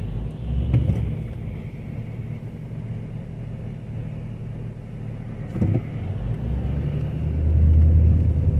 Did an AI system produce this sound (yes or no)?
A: no